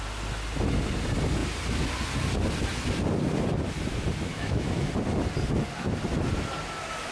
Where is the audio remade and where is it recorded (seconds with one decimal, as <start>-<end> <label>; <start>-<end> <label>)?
0.0-4.3 recorded; 4.3-4.9 remade; 4.9-7.1 recorded